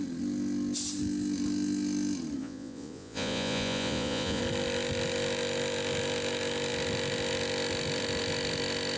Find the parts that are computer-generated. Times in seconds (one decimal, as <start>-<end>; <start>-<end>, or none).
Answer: 2.4-4.4